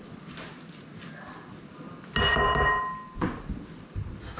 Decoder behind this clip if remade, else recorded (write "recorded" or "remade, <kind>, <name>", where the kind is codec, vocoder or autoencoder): recorded